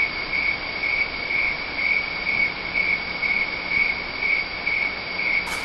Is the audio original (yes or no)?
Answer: no